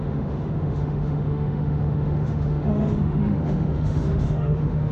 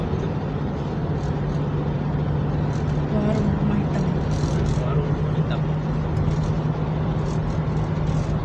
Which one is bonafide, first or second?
second